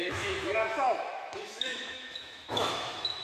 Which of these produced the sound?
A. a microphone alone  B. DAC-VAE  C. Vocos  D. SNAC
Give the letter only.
B